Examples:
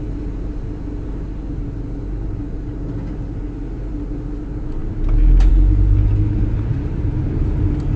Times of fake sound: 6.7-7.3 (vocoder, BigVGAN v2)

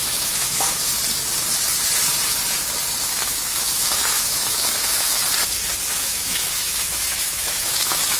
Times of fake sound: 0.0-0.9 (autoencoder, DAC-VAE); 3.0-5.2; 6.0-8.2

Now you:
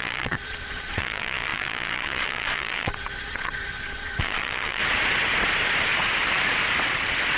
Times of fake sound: 0.0-4.8 (vocoder, Vocos)

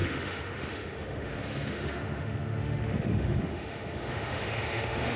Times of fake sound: 0.0-5.2 (autoencoder, DAC-VAE)

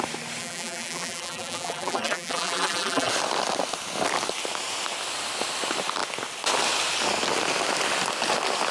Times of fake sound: 0.4-3.1 (vocoder, BigVGAN v2)

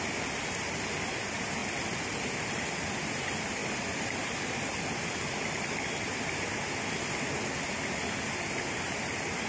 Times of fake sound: none